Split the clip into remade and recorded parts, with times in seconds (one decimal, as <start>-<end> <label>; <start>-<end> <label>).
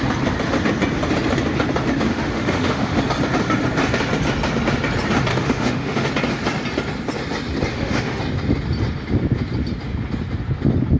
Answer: 0.0-2.1 recorded; 2.1-3.0 remade; 3.0-5.3 recorded; 5.3-6.1 remade; 6.1-7.7 recorded; 7.7-8.2 remade; 8.2-11.0 recorded